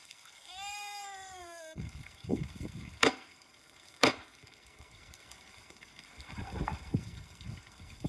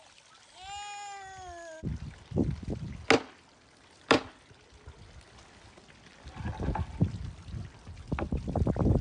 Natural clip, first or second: second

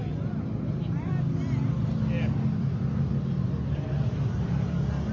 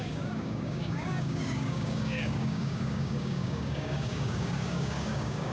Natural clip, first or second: first